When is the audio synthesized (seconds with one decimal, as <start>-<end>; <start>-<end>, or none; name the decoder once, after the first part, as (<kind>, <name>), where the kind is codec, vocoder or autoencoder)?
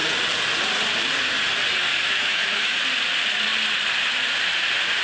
1.9-2.8 (autoencoder, DAC-VAE)